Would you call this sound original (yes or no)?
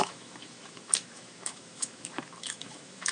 no